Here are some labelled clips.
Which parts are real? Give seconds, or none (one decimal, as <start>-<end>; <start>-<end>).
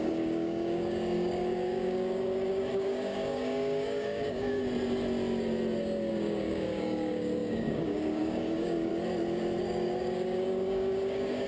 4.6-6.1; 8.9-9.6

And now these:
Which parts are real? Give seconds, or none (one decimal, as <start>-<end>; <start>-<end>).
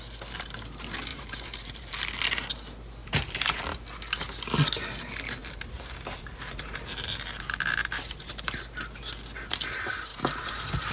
0.0-1.1; 2.1-3.0; 3.6-5.4; 8.3-10.1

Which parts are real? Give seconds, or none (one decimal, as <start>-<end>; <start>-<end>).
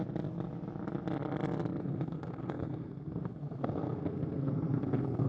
0.0-1.8